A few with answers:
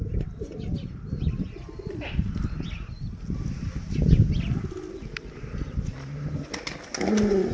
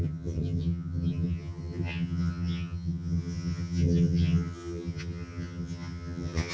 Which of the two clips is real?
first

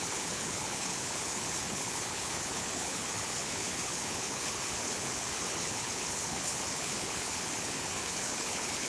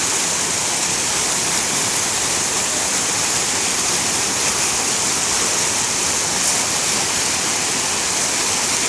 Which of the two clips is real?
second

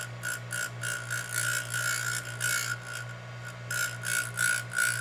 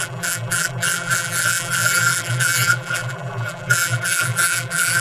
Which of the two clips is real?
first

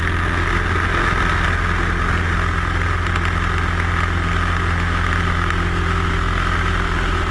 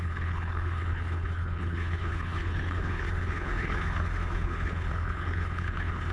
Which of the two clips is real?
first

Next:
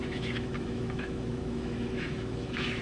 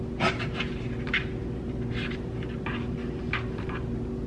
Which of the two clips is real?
second